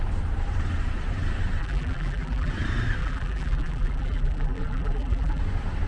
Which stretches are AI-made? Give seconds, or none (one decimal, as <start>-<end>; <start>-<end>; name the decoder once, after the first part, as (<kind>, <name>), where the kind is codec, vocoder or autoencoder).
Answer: 1.6-2.5 (vocoder, BigVGAN v2); 3.0-5.4

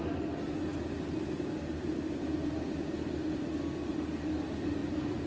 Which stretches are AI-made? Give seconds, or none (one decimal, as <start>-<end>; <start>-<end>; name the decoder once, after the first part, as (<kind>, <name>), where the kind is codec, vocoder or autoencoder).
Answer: none

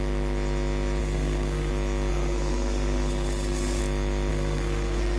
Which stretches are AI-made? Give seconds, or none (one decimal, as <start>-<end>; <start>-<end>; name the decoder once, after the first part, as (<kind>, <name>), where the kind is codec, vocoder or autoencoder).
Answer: 1.0-1.7 (codec, SNAC); 2.1-3.8; 4.3-5.2

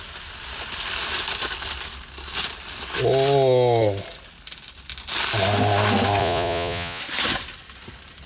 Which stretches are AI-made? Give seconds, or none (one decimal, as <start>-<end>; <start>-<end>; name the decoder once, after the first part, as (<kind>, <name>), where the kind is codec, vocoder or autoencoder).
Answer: 6.2-7.0 (vocoder, Vocos)